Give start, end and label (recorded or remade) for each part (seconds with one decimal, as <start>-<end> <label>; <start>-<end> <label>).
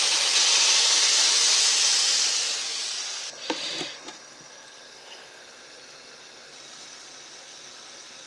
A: 0.0-2.7 recorded; 2.7-4.5 remade; 4.5-8.3 recorded